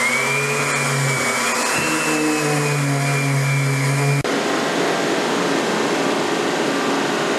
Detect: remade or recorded recorded